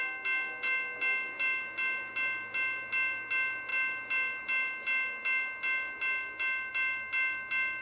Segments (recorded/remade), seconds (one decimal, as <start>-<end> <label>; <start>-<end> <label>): 0.0-7.8 recorded